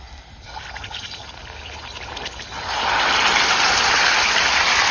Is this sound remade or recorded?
recorded